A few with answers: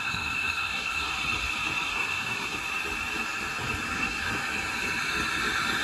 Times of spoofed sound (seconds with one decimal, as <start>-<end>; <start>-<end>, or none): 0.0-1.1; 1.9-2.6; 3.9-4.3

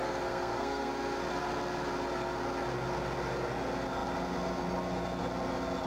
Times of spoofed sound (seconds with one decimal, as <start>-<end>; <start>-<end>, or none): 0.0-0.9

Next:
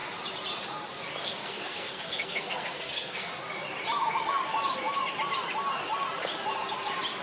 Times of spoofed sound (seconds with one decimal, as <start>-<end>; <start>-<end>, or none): 1.2-3.3

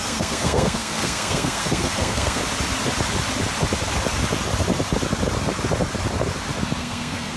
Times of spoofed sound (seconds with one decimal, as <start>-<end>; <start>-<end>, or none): 0.0-2.4; 6.8-7.4

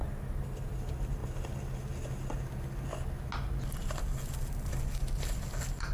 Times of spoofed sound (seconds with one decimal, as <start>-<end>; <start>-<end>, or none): none

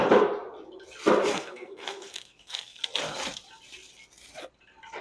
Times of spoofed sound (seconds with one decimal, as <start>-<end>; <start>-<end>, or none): 1.3-2.8